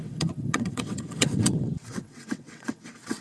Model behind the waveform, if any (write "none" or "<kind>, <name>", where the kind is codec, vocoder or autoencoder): vocoder, WaveNeXt